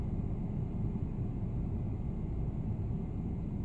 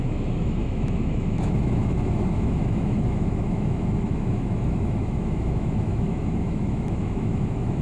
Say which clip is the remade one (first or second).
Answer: second